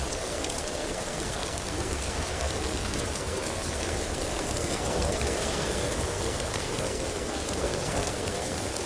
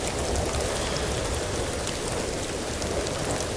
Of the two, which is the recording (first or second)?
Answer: second